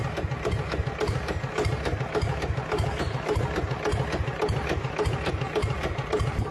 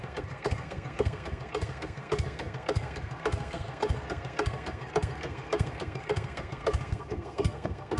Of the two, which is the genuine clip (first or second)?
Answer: first